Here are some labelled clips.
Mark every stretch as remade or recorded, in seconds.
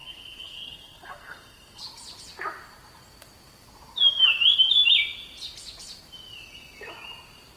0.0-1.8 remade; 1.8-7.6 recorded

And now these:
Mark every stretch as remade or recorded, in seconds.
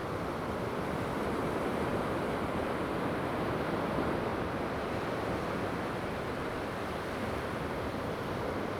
0.0-0.8 recorded; 0.8-8.8 remade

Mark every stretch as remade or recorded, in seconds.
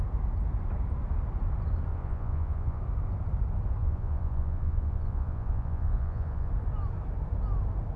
0.0-1.9 recorded; 1.9-2.8 remade; 2.8-3.8 recorded; 3.8-6.5 remade; 6.5-8.0 recorded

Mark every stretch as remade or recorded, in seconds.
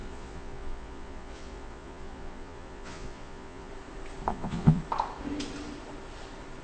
0.0-3.7 remade; 3.7-4.3 recorded; 4.3-4.8 remade; 4.8-6.6 recorded